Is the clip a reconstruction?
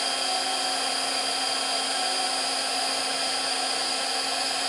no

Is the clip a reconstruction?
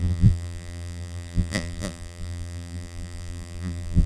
yes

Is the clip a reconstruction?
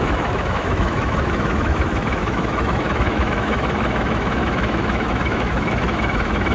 yes